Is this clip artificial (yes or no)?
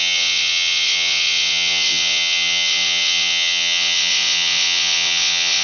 yes